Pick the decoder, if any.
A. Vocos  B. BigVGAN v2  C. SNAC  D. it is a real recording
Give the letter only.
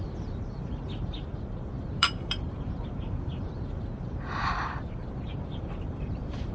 B